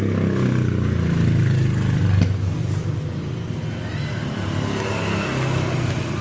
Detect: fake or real real